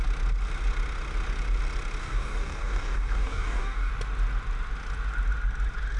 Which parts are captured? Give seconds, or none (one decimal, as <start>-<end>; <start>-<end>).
0.0-2.0; 3.9-6.0